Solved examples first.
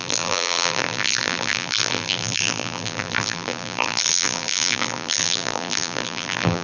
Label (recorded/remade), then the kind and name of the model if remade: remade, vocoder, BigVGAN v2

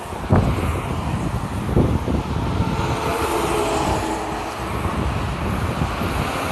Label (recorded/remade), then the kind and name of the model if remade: recorded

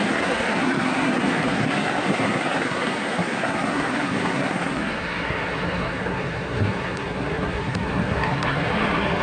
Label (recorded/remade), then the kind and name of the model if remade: remade, codec, SNAC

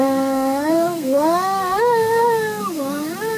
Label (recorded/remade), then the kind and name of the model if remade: remade, codec, SNAC